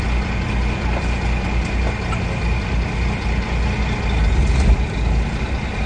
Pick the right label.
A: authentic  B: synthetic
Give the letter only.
A